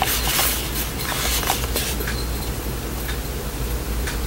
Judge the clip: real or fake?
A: real